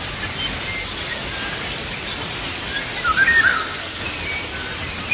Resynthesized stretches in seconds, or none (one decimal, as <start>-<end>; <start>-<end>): 3.5-4.0